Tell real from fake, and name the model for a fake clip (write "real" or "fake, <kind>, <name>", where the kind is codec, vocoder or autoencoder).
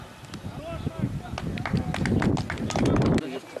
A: real